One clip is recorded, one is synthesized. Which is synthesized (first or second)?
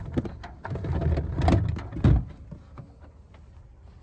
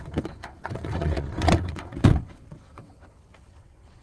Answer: second